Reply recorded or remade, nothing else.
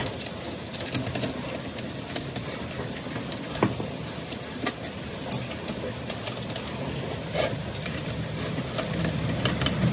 recorded